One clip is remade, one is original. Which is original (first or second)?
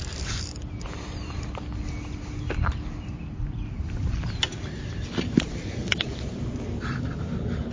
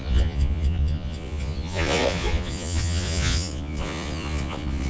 first